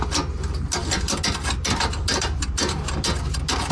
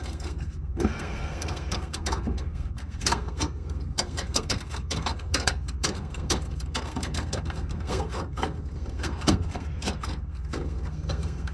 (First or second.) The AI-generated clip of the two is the second